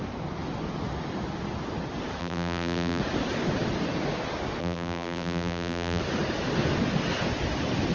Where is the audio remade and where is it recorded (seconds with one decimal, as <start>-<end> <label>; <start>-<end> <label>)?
0.0-2.2 recorded; 2.2-3.0 remade; 3.0-4.6 recorded; 4.6-6.0 remade; 6.0-7.9 recorded